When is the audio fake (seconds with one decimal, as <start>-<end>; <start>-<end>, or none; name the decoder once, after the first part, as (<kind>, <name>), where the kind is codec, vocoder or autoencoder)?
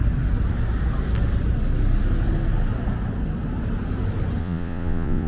4.4-5.3 (vocoder, Vocos)